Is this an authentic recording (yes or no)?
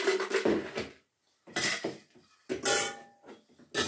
yes